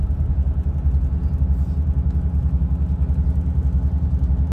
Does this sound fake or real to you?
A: real